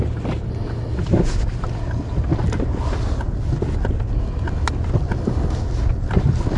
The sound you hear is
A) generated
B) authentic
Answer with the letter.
B